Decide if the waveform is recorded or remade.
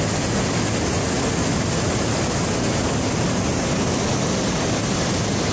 recorded